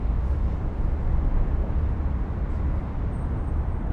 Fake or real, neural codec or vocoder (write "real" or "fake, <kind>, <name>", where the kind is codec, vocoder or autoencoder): real